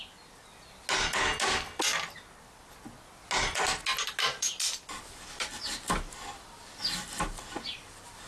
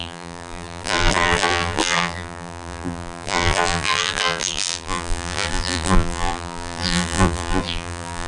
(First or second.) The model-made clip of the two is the second